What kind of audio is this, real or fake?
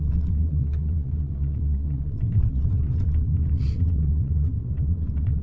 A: fake